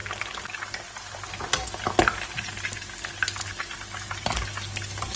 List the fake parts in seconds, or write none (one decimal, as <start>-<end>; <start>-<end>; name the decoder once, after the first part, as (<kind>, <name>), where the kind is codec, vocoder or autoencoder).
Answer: 0.0-1.3 (vocoder, BigVGAN v2)